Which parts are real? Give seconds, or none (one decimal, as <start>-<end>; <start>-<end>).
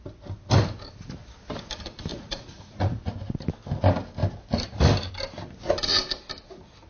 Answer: 0.0-2.1; 3.1-6.9